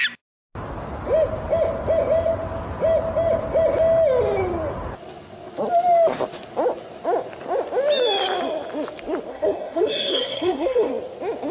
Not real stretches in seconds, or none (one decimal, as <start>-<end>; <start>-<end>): 9.3-10.9